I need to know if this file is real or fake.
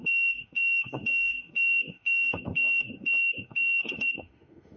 fake